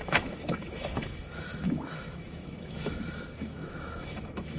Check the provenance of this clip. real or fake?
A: fake